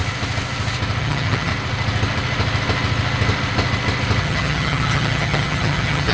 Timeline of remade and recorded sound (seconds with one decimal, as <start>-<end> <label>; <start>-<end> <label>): 0.0-1.0 recorded; 1.0-1.5 remade; 1.5-4.2 recorded; 4.2-6.1 remade